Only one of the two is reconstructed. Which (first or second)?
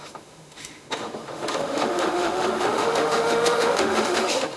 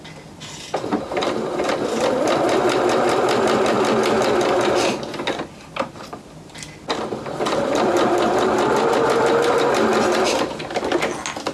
first